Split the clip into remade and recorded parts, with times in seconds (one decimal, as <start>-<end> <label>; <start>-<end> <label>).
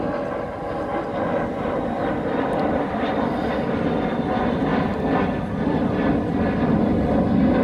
0.0-7.6 recorded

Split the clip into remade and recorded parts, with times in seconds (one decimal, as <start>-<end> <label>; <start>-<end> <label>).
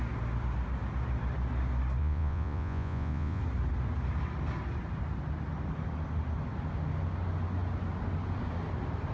0.0-2.0 recorded; 2.0-3.4 remade; 3.4-9.1 recorded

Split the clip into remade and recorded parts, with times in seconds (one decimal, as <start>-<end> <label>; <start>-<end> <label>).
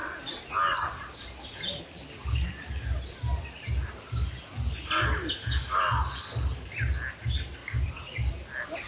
0.0-7.6 recorded; 7.6-8.3 remade; 8.3-8.9 recorded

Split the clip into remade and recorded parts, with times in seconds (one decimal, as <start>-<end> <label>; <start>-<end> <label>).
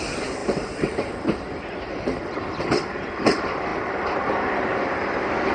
0.0-0.4 recorded; 0.4-1.1 remade; 1.1-5.5 recorded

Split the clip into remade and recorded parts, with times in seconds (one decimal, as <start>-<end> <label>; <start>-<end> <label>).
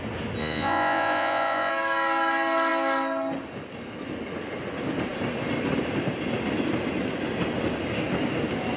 0.0-0.4 recorded; 0.4-1.7 remade; 1.7-8.8 recorded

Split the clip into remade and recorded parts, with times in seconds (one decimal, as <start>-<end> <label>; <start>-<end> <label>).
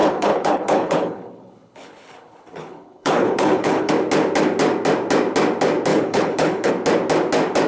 0.0-3.9 remade; 3.9-5.9 recorded; 5.9-6.7 remade; 6.7-7.7 recorded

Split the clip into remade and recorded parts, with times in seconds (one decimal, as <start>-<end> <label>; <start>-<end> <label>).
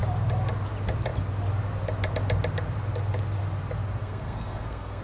0.0-4.0 recorded; 4.0-5.0 remade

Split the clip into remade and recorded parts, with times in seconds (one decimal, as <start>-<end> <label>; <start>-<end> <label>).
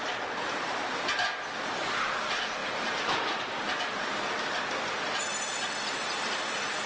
0.0-2.6 recorded; 2.6-4.3 remade; 4.3-6.9 recorded